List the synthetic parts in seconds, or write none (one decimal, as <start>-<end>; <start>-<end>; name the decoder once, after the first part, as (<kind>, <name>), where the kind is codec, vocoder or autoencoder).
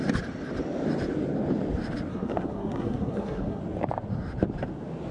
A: 2.1-3.6 (codec, SNAC)